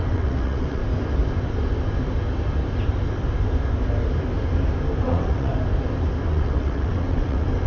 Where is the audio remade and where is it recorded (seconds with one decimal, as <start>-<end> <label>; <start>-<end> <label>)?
0.0-0.8 remade; 0.8-5.0 recorded; 5.0-5.5 remade; 5.5-6.3 recorded; 6.3-7.7 remade